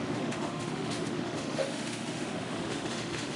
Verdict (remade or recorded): remade